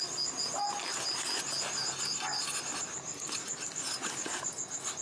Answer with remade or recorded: recorded